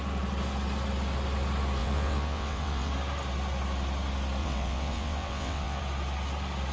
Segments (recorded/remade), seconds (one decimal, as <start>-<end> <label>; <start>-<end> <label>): 0.0-1.8 recorded; 1.8-2.9 remade; 2.9-4.4 recorded; 4.4-5.8 remade; 5.8-6.7 recorded